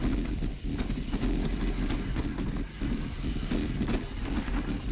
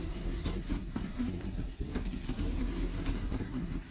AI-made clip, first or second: second